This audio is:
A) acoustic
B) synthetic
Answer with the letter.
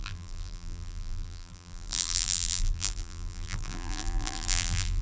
B